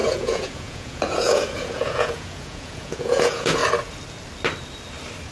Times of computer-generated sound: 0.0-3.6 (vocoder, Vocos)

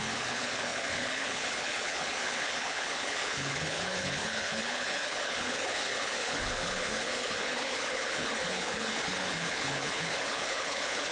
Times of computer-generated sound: 0.0-11.1 (codec, HILCodec)

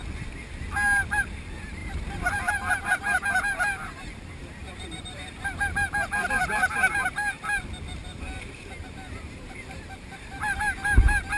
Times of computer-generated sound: 1.8-6.3 (vocoder, BigVGAN v2); 8.0-10.6

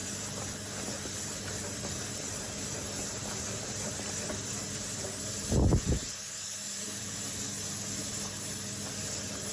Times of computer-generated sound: 6.2-7.2 (codec, DAC)

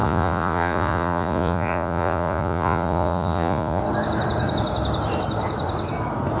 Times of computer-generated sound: 0.0-3.8 (vocoder, Vocos)